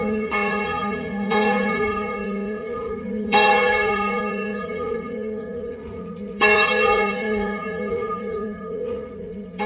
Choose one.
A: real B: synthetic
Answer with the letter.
B